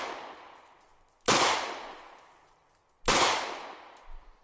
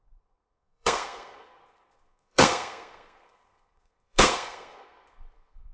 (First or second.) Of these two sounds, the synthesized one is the second